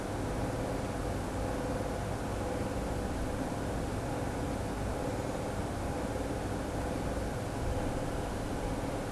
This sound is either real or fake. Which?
real